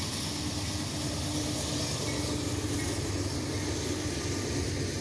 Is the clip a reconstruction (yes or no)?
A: no